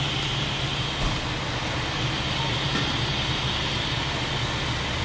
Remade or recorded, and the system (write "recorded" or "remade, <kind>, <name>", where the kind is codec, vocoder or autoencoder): recorded